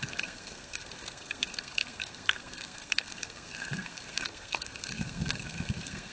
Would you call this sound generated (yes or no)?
yes